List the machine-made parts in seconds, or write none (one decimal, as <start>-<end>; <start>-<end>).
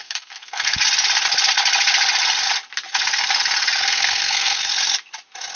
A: 0.0-0.8; 3.8-4.7